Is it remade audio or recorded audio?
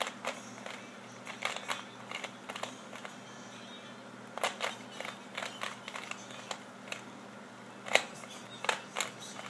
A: recorded